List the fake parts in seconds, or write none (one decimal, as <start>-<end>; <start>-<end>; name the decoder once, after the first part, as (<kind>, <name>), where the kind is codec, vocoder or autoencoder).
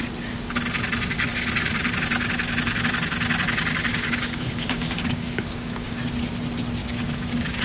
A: 3.9-6.0 (codec, DAC); 6.8-7.6